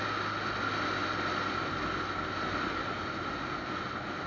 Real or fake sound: real